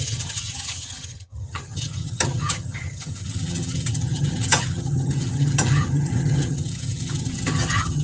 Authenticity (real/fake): fake